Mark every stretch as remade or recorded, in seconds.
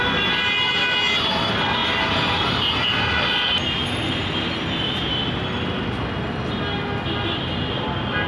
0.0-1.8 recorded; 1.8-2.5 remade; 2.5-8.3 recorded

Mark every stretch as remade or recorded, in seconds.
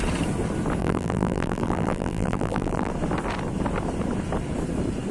0.0-0.8 recorded; 0.8-2.9 remade; 2.9-5.1 recorded